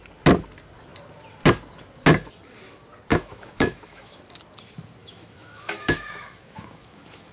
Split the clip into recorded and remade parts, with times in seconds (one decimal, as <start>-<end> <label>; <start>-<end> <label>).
0.0-3.1 recorded; 3.1-4.2 remade; 4.2-5.0 recorded; 5.0-7.3 remade